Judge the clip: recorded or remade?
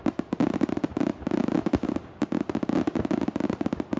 recorded